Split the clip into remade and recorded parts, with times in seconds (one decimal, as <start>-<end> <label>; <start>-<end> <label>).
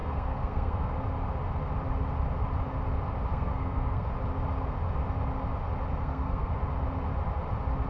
0.0-0.9 remade; 0.9-3.3 recorded; 3.3-4.1 remade; 4.1-6.0 recorded; 6.0-6.5 remade; 6.5-7.9 recorded